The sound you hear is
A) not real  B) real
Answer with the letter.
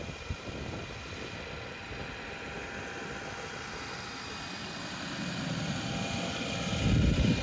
B